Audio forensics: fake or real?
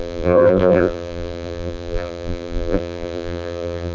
fake